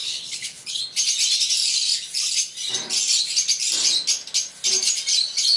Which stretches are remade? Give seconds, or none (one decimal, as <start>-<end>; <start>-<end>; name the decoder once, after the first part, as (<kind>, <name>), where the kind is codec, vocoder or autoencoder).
0.0-0.8 (codec, HILCodec)